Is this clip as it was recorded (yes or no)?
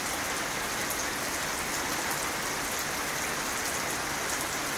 yes